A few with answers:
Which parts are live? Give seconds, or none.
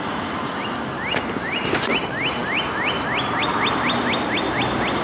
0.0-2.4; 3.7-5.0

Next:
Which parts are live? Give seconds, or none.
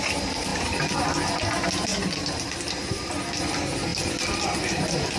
0.0-5.2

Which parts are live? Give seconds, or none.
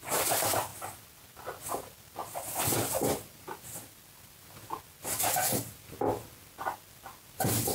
0.0-2.2; 4.6-7.7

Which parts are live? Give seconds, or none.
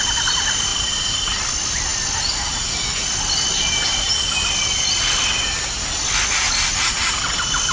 0.0-7.7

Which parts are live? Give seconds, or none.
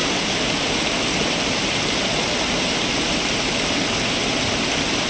3.1-5.1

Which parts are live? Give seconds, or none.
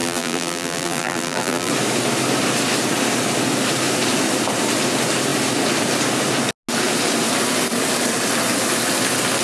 1.7-9.4